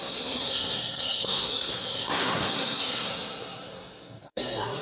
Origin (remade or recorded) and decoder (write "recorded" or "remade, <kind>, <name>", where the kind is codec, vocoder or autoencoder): remade, codec, SNAC